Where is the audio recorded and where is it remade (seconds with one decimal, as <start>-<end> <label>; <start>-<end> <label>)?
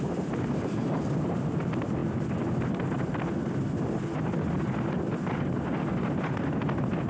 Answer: 0.0-7.1 recorded